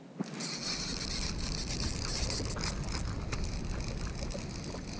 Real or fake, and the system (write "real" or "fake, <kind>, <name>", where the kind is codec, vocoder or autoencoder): real